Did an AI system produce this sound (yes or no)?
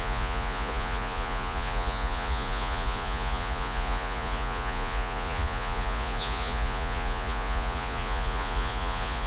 yes